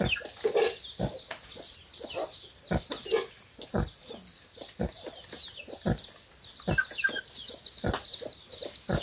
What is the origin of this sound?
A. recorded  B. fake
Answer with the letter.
A